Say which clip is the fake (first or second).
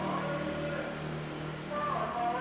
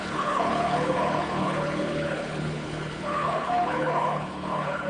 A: second